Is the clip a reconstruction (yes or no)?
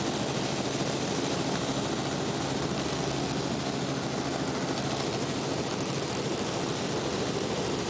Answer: no